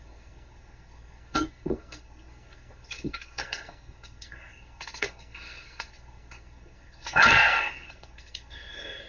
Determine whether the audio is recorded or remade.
remade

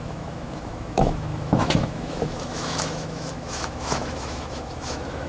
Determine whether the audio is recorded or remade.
remade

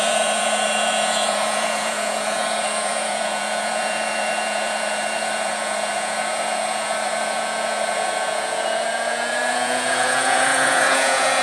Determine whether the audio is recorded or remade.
remade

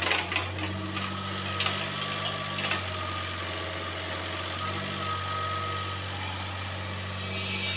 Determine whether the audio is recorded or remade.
recorded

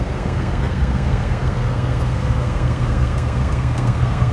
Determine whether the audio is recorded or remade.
remade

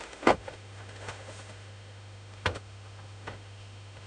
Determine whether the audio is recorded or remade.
remade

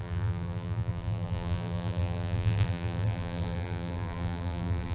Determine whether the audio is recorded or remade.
remade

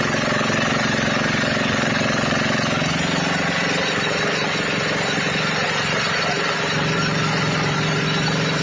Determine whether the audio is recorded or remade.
remade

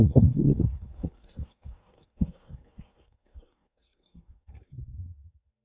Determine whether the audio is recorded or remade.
remade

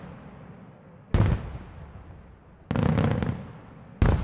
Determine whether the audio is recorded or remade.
recorded